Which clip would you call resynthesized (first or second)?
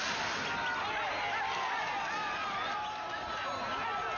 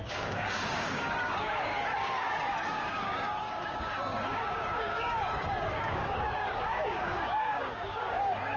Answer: second